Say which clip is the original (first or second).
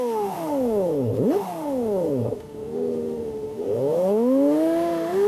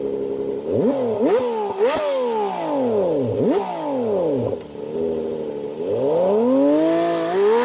second